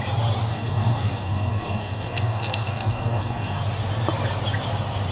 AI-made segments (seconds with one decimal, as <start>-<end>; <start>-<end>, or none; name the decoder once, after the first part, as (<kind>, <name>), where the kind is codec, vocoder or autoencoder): 0.5-3.6 (codec, SNAC)

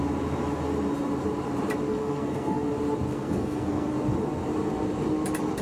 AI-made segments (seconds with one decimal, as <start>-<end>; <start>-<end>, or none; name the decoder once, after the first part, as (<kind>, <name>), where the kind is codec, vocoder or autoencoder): 1.9-2.7 (codec, SNAC); 3.1-3.9

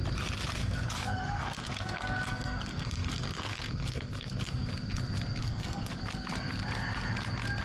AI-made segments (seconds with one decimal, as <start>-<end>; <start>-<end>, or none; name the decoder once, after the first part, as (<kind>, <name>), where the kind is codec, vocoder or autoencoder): 0.6-4.7 (codec, SNAC); 5.4-6.0

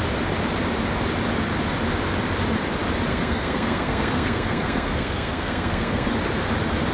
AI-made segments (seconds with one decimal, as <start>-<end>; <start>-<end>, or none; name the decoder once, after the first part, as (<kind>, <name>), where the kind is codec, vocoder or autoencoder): 3.1-6.1 (codec, SNAC)

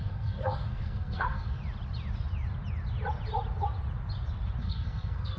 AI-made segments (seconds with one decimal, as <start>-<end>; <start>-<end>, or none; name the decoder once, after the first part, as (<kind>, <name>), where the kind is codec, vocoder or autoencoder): 0.0-1.6 (codec, SNAC); 4.6-5.4

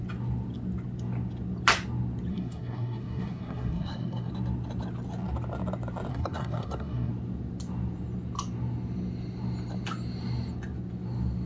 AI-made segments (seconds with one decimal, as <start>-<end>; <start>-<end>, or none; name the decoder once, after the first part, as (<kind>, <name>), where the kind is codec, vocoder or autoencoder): 2.3-4.3 (codec, SNAC); 6.1-7.1